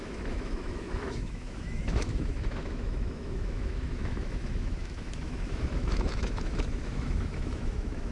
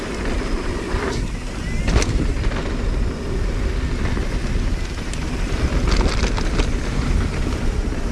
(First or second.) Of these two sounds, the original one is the second